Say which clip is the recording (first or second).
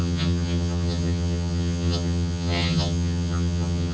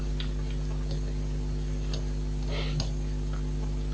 second